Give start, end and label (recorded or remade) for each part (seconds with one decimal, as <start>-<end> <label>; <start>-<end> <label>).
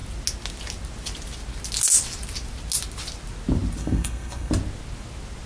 0.0-3.8 recorded; 3.8-4.5 remade; 4.5-5.5 recorded